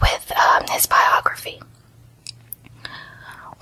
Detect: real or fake real